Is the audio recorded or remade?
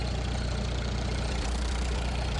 recorded